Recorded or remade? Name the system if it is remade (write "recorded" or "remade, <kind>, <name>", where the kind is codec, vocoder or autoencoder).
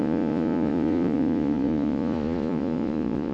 remade, vocoder, Vocos